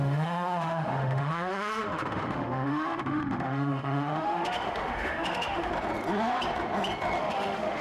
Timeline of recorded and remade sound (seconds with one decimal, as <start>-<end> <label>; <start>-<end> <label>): 0.0-5.7 remade; 5.7-7.2 recorded; 7.2-7.8 remade